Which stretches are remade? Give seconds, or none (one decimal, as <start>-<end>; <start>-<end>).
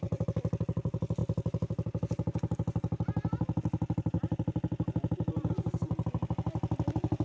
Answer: none